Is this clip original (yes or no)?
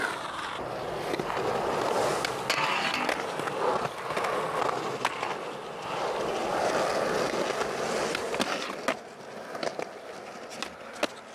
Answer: yes